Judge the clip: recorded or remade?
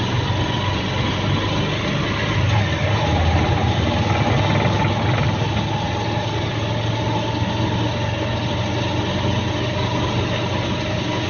recorded